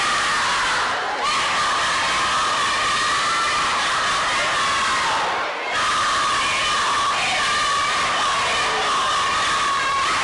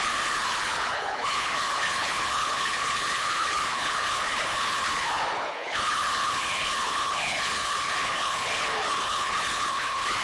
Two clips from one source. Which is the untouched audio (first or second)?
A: first